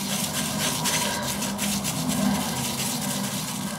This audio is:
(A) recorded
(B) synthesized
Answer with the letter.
A